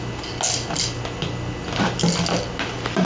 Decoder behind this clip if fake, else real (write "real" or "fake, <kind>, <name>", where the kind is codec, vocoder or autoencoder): real